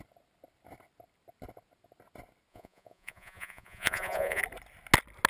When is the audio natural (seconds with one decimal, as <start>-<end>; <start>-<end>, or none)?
0.0-2.5; 4.4-5.3